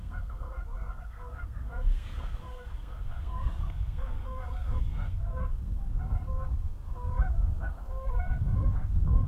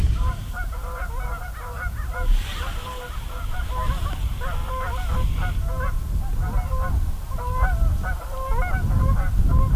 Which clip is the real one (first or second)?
second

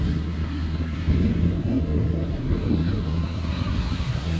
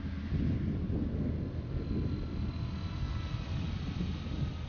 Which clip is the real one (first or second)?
second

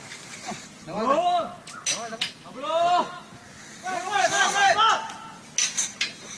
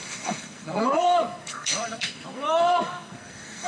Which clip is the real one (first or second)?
first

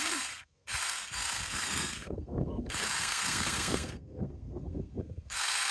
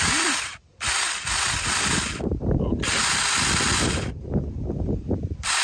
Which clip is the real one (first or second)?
second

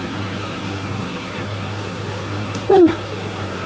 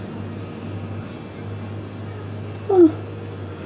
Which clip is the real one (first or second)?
second